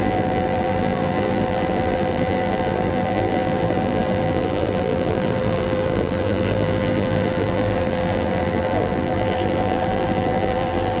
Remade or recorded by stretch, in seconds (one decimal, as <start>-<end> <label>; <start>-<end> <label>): 0.0-11.0 remade